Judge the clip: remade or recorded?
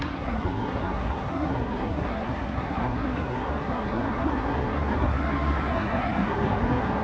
remade